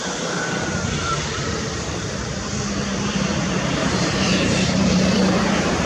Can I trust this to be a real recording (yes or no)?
no